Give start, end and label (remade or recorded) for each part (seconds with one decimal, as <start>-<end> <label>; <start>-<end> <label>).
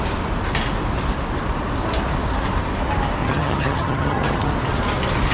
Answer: 0.0-3.2 recorded; 3.2-4.5 remade; 4.5-5.3 recorded